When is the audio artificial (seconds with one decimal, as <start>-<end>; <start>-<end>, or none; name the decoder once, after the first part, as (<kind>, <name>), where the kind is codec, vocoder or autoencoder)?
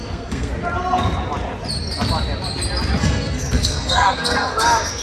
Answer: 0.0-0.5 (codec, SNAC); 3.0-5.0